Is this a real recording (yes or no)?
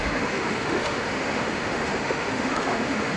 no